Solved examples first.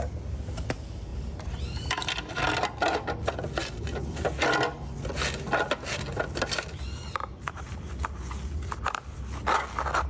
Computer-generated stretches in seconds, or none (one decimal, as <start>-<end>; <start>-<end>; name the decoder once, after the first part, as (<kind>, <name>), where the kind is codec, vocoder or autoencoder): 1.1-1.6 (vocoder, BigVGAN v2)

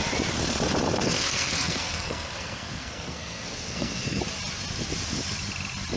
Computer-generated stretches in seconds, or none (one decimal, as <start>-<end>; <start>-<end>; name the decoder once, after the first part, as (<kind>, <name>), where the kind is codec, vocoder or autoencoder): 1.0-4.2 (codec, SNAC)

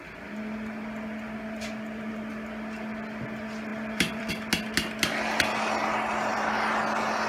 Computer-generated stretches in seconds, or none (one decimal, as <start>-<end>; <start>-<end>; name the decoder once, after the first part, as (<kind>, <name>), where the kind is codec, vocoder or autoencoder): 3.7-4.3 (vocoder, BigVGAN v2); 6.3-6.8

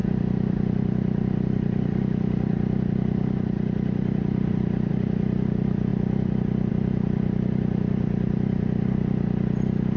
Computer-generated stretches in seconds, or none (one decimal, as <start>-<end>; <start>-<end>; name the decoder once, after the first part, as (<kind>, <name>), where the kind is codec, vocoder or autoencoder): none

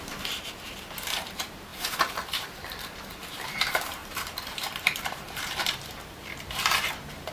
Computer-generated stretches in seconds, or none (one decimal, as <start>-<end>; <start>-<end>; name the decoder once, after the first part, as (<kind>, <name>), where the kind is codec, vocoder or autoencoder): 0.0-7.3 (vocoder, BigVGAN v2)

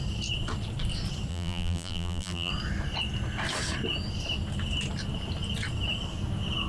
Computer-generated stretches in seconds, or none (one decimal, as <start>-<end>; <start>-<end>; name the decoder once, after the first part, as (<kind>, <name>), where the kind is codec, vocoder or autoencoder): 1.3-2.5 (vocoder, BigVGAN v2)

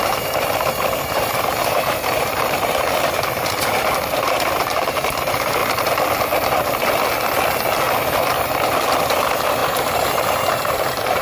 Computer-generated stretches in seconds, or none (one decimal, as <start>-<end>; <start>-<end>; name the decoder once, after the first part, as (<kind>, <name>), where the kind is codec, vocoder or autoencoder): 0.0-5.6 (vocoder, BigVGAN v2); 9.1-11.2

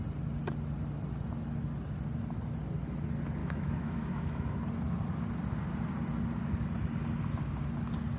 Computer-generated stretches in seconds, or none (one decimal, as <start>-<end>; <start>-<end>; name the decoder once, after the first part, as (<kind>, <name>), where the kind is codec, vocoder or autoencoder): 3.4-4.6 (autoencoder, DAC-VAE)